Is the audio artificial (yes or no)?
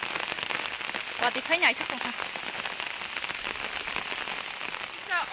no